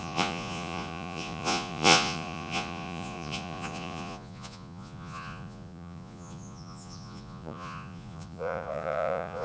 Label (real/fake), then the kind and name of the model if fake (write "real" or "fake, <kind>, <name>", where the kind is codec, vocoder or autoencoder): fake, vocoder, Vocos